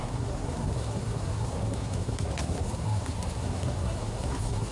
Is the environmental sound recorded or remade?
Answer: remade